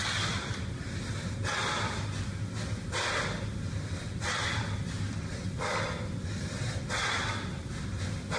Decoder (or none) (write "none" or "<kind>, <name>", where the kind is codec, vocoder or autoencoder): none